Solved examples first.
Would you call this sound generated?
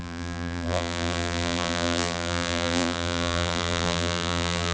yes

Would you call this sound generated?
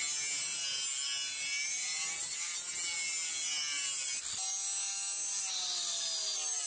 no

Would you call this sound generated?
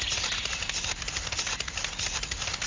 no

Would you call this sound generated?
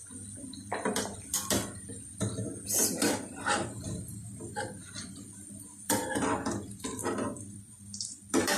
yes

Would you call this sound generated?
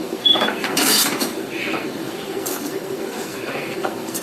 yes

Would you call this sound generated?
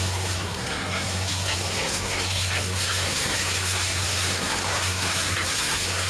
yes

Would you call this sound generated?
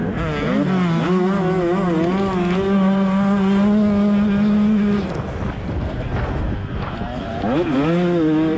no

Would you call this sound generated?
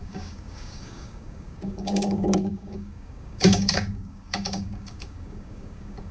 yes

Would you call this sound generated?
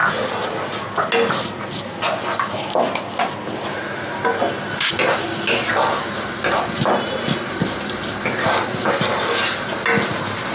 no